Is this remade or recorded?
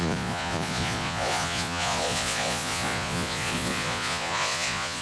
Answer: remade